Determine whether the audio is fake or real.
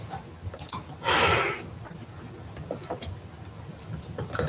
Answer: real